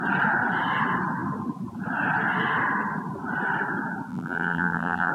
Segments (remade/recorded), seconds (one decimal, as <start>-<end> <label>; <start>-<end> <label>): 0.0-4.1 recorded; 4.1-5.1 remade